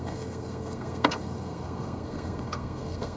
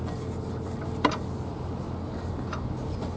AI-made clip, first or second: first